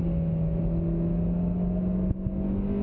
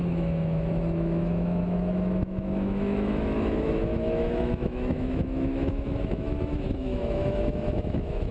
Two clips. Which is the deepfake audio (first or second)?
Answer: second